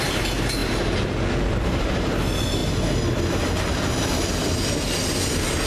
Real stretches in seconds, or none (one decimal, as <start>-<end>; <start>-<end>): 0.0-5.7